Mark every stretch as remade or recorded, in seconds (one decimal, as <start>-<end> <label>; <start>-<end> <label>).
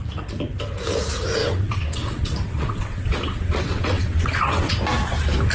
0.0-1.4 recorded; 1.4-4.7 remade; 4.7-5.5 recorded